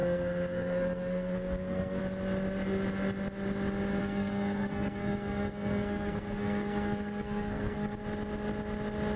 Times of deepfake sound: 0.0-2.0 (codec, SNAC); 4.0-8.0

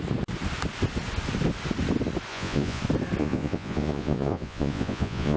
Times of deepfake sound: 2.3-2.8 (vocoder, Vocos); 3.2-5.4